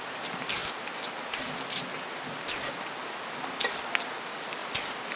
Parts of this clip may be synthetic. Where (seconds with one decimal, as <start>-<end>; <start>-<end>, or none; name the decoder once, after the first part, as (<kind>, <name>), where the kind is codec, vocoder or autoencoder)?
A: none